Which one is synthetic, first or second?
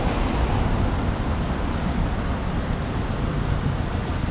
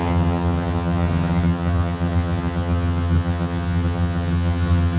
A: second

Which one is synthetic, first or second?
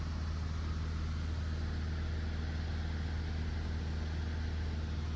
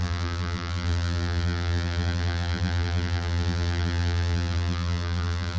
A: second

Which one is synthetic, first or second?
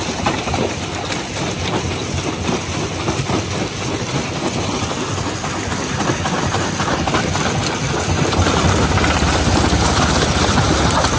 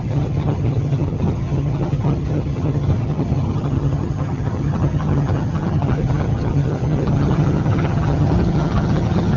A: second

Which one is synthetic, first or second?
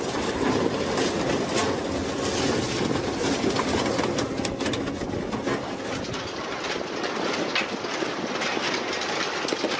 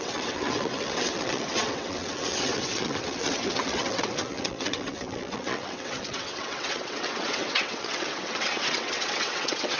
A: second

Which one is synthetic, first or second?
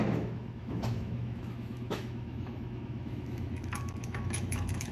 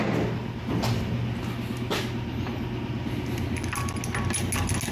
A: first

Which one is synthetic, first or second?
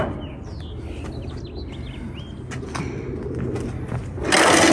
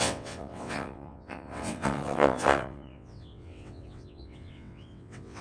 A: second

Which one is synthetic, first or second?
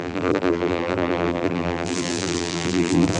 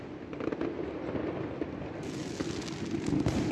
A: first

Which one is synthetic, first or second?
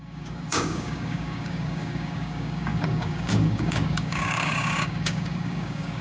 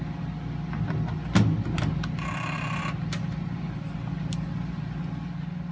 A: first